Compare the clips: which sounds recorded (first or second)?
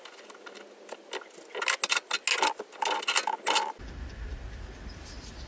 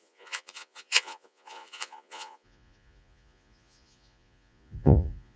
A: first